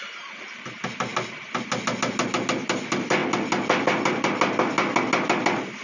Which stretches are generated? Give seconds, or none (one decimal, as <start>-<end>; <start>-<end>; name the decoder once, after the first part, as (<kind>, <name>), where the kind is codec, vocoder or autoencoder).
none